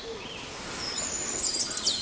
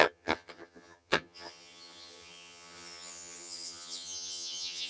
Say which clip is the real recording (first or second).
first